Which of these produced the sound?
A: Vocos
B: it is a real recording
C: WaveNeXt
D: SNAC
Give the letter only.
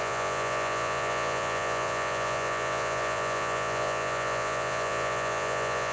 A